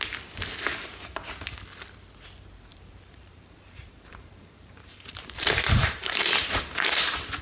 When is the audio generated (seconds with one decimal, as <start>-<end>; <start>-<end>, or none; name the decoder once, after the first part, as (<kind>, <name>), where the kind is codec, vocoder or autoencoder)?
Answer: 0.7-1.3 (vocoder, BigVGAN v2); 2.7-7.0